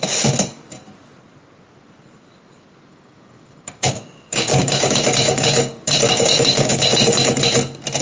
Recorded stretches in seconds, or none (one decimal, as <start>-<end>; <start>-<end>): 0.0-2.9; 7.3-8.0